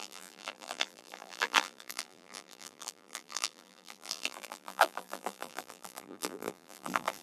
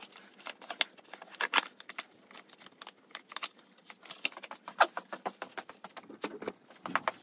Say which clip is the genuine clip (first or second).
second